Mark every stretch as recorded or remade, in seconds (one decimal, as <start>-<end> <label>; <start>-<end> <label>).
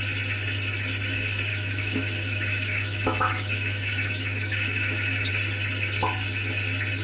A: 0.0-1.5 recorded; 1.5-5.3 remade; 5.3-7.0 recorded